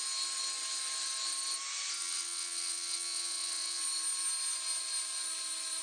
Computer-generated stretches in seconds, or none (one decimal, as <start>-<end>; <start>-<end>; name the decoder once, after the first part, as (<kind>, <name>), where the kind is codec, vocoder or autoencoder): 2.0-3.8 (vocoder, WaveNeXt)

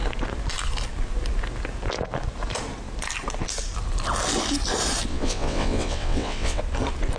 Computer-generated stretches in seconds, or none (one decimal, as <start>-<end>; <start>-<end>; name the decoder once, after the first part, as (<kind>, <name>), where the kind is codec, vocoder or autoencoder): 5.1-6.6 (vocoder, WaveNeXt)

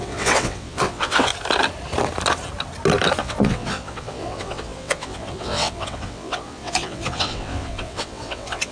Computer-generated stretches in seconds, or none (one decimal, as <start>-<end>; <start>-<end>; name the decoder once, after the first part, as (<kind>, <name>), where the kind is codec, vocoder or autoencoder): 0.0-1.3 (vocoder, WaveNeXt); 3.2-8.7

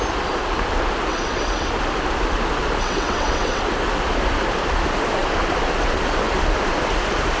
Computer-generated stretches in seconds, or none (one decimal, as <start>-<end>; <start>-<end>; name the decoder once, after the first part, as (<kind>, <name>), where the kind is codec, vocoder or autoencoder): 1.1-1.7 (vocoder, WaveNeXt); 2.8-3.6

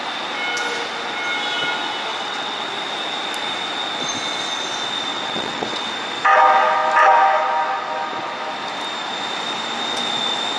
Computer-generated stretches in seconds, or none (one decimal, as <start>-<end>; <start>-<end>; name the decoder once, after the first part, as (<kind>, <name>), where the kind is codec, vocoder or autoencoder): 2.1-2.6 (vocoder, WaveNeXt); 5.1-5.9

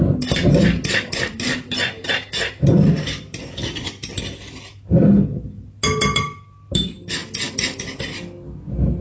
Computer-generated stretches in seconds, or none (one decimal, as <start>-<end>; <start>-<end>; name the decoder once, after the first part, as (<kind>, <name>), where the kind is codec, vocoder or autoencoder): none

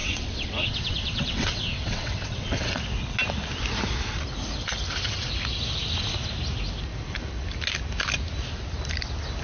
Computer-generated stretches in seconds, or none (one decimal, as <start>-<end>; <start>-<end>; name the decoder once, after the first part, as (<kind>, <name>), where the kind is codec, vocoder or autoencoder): 0.0-2.8 (vocoder, WaveNeXt)

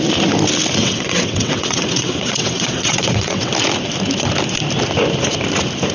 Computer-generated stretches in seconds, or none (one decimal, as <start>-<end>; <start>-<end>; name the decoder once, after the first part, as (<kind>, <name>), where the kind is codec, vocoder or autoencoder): 0.8-3.5 (vocoder, WaveNeXt)